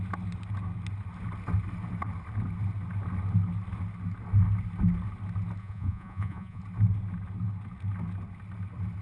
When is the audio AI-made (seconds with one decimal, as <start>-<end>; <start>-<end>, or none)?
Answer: 5.6-6.6